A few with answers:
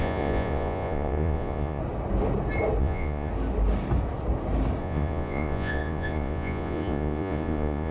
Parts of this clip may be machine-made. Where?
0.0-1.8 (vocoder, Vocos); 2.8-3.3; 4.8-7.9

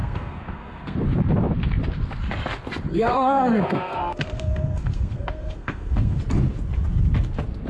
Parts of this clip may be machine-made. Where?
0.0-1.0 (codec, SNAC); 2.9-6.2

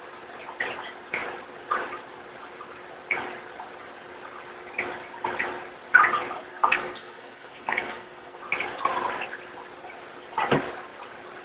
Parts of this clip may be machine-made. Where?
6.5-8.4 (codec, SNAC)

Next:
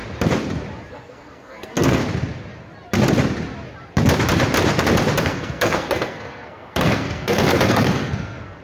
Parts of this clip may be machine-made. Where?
0.9-2.0 (codec, SNAC); 5.2-8.6

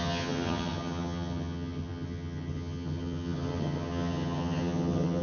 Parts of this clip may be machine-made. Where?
0.0-5.2 (vocoder, HiFi-GAN)